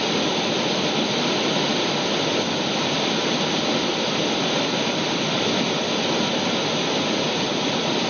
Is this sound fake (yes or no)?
no